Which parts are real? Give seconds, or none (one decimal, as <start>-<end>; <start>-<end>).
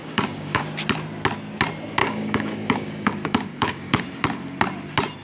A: 0.6-2.0; 4.0-5.2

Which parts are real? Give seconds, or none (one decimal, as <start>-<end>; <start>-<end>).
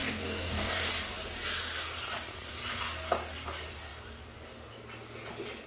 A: 0.9-5.7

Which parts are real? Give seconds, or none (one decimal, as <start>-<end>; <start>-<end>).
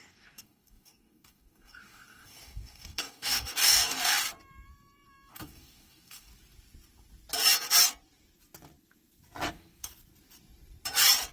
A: 4.2-5.3; 6.3-9.5; 9.9-11.3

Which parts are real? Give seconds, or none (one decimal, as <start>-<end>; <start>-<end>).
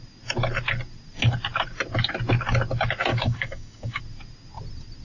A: 0.0-3.1; 4.0-5.0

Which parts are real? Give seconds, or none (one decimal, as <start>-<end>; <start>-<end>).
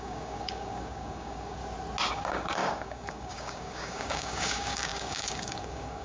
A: 1.6-2.1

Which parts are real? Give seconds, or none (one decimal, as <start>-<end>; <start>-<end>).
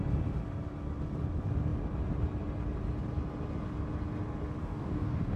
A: 0.0-4.6